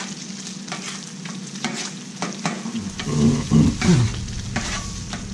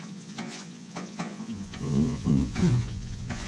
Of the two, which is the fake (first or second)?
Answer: second